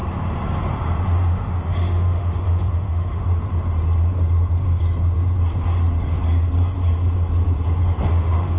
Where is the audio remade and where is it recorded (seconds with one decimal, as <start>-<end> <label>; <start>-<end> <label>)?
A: 0.0-1.0 recorded; 1.0-3.2 remade; 3.2-8.1 recorded; 8.1-8.6 remade